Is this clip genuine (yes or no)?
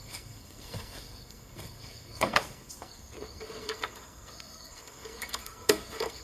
no